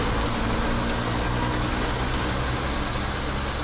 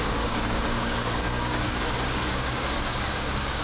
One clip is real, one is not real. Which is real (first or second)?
first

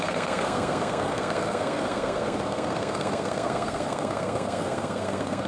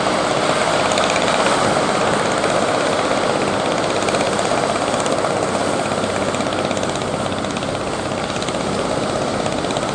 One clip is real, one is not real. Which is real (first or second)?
second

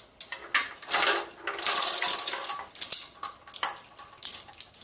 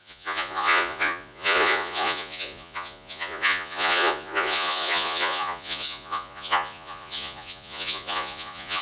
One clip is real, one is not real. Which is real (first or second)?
first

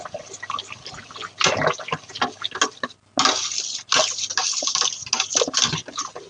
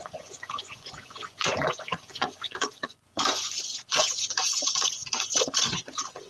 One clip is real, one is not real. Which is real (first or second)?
first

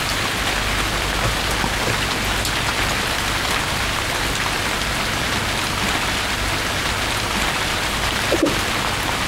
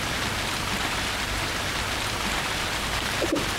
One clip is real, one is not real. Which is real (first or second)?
first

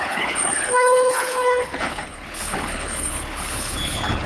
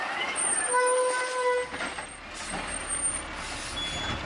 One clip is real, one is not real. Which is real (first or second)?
second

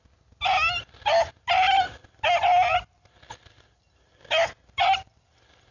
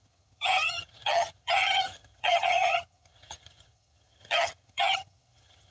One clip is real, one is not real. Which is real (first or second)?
first